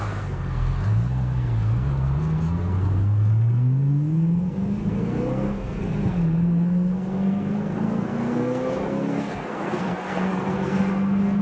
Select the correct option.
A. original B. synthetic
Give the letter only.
B